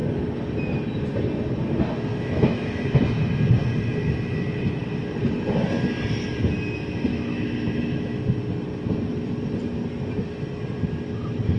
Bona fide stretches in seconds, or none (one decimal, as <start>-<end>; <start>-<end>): 0.0-2.1; 3.0-7.1; 8.2-11.6